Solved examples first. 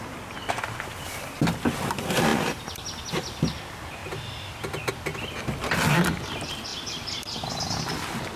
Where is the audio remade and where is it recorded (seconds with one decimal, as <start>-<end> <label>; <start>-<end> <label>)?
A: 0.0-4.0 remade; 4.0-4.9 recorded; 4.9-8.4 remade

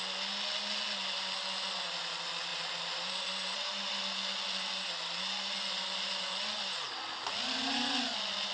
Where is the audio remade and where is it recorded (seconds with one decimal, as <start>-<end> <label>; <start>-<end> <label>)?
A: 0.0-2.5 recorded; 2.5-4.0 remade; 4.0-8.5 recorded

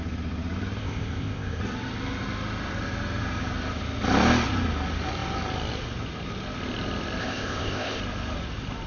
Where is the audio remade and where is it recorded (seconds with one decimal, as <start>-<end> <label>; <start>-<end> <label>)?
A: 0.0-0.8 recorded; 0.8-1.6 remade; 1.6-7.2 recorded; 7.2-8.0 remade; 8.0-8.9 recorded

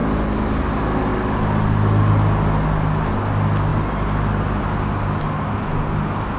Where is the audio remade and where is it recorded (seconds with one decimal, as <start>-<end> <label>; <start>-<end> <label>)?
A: 0.0-6.4 recorded

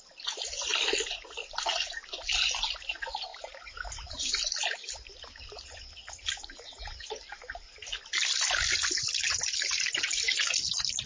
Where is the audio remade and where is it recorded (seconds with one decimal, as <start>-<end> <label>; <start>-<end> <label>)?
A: 0.0-11.1 recorded

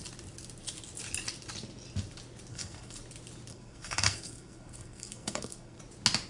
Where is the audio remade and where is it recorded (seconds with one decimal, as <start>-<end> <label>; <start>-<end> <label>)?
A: 0.0-2.5 recorded; 2.5-3.0 remade; 3.0-3.5 recorded; 3.5-5.8 remade; 5.8-6.3 recorded